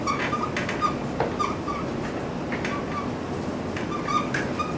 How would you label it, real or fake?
real